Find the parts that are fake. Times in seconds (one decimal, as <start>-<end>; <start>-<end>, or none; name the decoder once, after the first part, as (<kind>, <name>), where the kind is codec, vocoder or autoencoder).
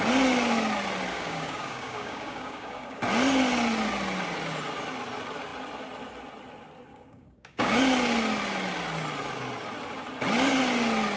1.1-3.0 (codec, DAC); 6.9-7.8